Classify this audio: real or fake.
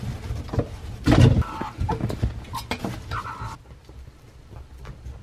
real